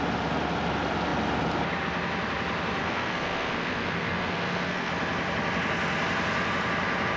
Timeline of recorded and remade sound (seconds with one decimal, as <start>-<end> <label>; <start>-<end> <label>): 0.0-2.8 recorded; 2.8-4.9 remade; 4.9-7.2 recorded